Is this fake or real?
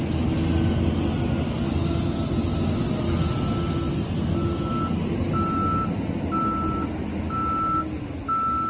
real